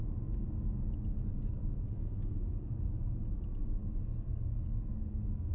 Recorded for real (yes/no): yes